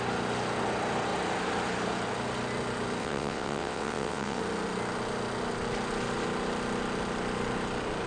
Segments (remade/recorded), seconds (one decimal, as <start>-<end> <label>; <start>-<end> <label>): 0.0-3.0 recorded; 3.0-4.4 remade; 4.4-8.1 recorded